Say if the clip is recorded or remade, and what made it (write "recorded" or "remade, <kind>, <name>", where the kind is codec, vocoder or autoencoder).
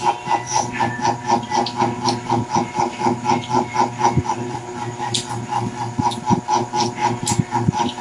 recorded